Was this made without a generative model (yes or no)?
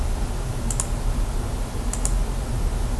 yes